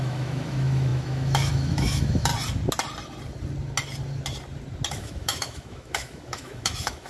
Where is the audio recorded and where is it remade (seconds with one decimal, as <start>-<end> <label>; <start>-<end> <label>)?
0.0-2.3 remade; 2.3-4.9 recorded; 4.9-7.1 remade